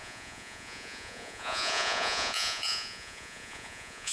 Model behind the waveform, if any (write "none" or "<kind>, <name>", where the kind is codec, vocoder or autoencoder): vocoder, Vocos